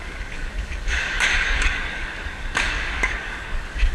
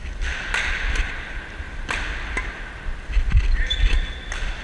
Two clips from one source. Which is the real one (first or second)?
second